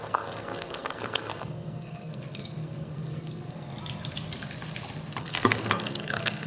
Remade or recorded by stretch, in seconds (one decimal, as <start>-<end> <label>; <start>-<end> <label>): 0.0-3.7 remade; 3.7-5.2 recorded; 5.2-6.5 remade